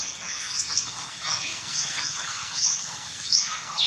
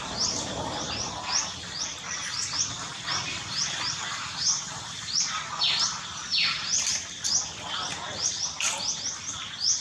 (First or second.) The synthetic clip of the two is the first